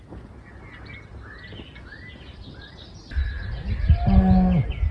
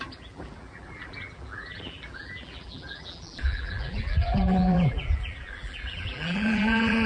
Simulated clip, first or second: second